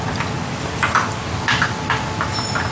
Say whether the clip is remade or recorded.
recorded